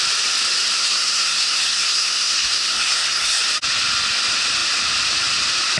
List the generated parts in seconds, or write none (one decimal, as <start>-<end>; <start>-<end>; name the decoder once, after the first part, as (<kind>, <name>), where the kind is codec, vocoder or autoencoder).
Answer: 0.8-3.4 (codec, SNAC)